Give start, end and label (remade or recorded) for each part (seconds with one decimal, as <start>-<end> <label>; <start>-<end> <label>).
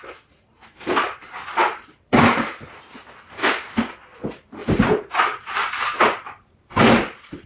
0.0-1.6 recorded; 1.6-3.7 remade; 3.7-4.6 recorded; 4.6-6.8 remade; 6.8-7.5 recorded